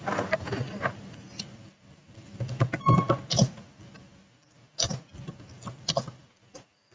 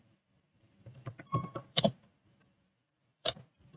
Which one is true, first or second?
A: first